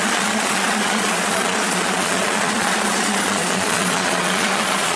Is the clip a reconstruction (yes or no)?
yes